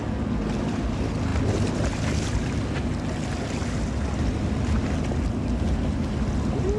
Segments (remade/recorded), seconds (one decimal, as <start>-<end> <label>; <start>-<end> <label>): 0.0-6.8 recorded